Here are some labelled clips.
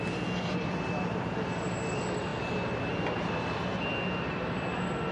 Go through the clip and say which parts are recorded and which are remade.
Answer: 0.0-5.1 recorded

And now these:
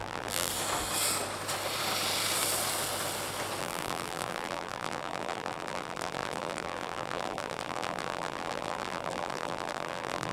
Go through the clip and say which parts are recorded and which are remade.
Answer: 0.0-0.5 remade; 0.5-3.6 recorded; 3.6-10.3 remade

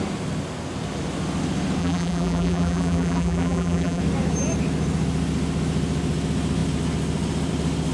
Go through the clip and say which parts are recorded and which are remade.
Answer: 0.0-1.8 recorded; 1.8-4.0 remade; 4.0-7.9 recorded

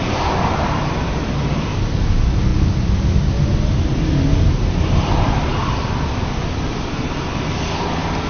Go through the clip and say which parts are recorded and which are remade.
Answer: 0.0-2.5 remade; 2.5-4.8 recorded; 4.8-8.3 remade

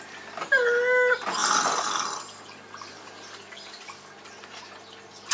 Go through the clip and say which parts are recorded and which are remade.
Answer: 0.0-1.4 recorded; 1.4-3.5 remade; 3.5-5.3 recorded